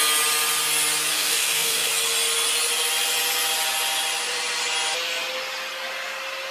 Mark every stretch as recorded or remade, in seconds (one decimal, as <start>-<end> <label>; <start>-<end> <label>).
0.0-1.1 recorded; 1.1-1.9 remade; 1.9-6.5 recorded